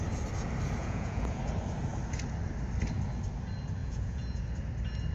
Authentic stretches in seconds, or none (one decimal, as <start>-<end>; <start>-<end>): 0.0-0.8; 1.4-3.8; 4.4-5.1